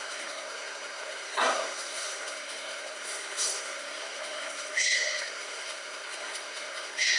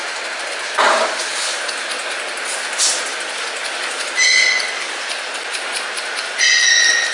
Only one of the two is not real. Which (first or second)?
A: first